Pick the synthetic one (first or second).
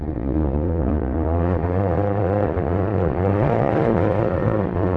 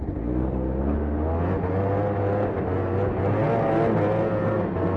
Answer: first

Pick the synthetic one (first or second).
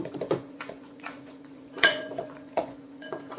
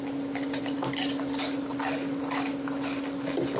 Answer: first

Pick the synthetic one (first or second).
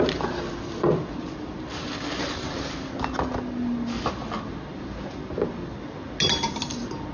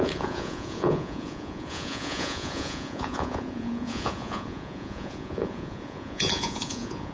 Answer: second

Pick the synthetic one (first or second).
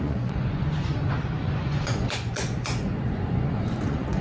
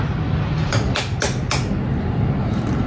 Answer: first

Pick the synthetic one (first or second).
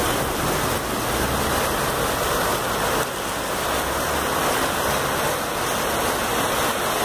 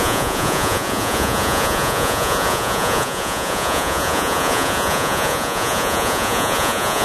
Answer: second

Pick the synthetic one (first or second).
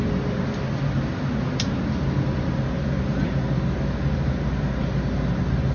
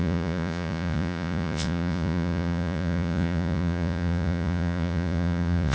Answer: second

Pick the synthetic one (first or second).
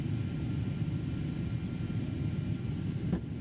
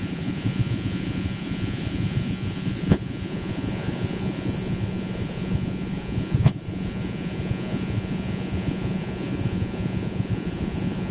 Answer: second